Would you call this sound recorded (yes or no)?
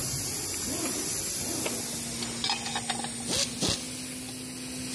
yes